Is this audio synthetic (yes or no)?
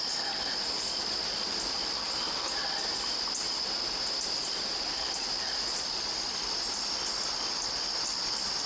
no